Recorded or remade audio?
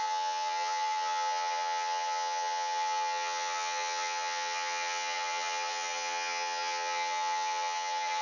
remade